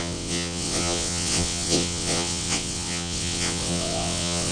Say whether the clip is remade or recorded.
remade